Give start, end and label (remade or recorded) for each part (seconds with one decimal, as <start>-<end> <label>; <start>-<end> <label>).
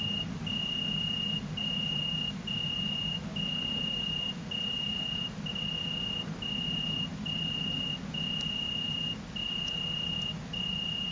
0.0-11.1 recorded